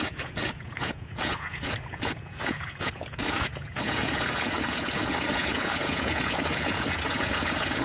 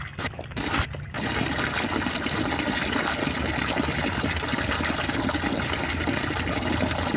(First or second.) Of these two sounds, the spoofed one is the first